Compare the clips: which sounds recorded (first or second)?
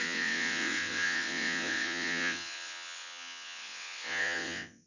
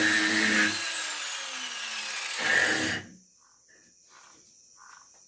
second